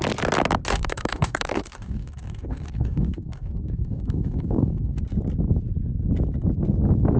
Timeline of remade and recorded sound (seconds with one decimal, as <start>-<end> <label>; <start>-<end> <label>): 0.0-0.7 recorded; 0.7-5.0 remade; 5.0-7.2 recorded

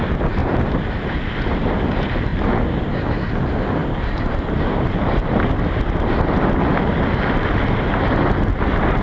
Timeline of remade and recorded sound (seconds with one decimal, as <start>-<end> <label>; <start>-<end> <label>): 0.0-0.4 recorded; 0.4-1.1 remade; 1.1-9.0 recorded

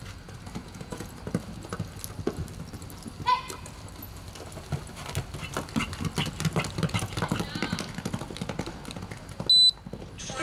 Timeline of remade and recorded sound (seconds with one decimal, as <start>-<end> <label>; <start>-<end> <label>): 0.0-0.6 recorded; 0.6-1.1 remade; 1.1-10.4 recorded